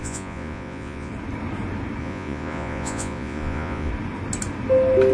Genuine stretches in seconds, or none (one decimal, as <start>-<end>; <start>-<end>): 1.1-2.0; 3.9-5.1